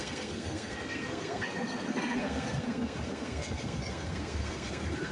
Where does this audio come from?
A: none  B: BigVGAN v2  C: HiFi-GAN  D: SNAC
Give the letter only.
D